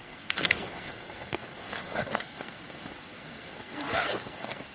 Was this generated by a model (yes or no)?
yes